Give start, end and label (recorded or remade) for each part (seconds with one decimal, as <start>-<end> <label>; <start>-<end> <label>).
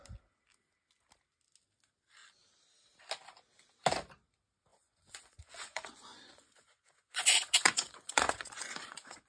0.0-4.7 recorded; 4.7-9.3 remade